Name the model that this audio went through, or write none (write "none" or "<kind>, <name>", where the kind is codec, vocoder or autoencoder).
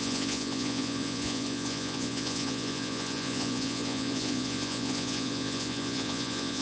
vocoder, Vocos